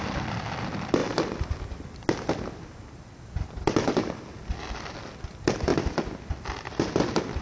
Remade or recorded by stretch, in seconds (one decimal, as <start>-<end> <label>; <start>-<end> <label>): 0.0-7.4 recorded